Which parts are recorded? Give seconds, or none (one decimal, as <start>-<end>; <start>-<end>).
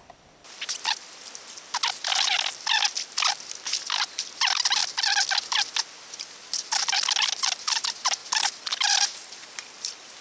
0.0-10.2